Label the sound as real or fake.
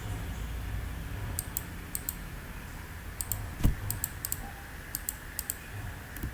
real